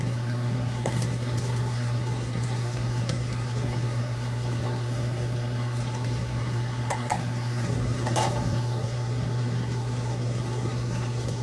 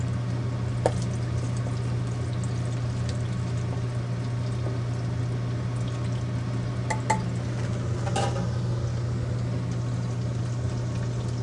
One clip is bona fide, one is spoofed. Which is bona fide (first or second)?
second